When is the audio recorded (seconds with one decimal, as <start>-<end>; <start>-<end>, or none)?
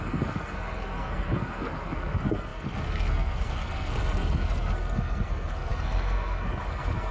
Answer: none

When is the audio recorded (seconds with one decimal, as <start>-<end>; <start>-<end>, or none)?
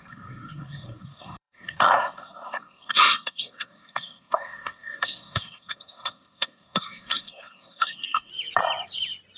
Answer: 8.3-9.4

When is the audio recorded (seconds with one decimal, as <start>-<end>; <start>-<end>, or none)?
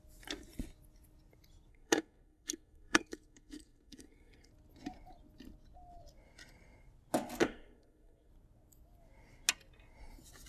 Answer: 0.0-1.7; 4.5-7.4; 8.3-10.5